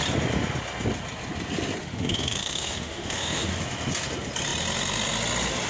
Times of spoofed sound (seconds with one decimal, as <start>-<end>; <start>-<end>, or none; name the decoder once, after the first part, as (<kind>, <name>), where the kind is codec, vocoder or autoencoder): 1.8-3.5 (autoencoder, DAC-VAE)